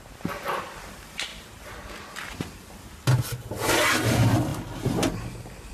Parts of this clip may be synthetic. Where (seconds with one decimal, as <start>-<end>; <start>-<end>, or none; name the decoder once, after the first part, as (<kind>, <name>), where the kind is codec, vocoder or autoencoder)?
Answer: 0.0-1.3 (vocoder, BigVGAN v2); 3.7-5.7